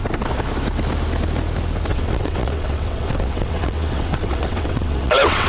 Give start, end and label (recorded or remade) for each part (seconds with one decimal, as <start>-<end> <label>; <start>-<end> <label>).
0.0-1.9 recorded; 1.9-5.5 remade